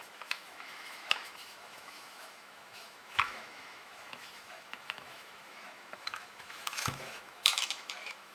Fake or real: fake